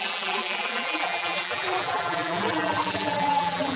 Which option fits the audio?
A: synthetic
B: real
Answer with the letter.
A